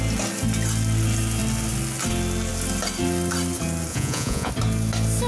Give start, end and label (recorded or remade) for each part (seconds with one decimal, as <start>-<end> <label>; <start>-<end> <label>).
0.0-3.9 recorded; 3.9-4.5 remade; 4.5-5.3 recorded